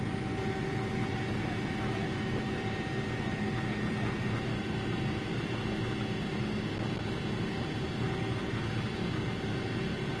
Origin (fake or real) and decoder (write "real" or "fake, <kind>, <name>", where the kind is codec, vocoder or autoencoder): real